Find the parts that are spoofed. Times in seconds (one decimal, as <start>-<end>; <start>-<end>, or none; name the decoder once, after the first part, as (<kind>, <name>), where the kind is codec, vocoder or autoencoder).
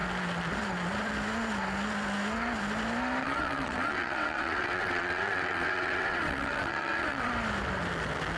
3.2-7.3 (vocoder, WaveNeXt)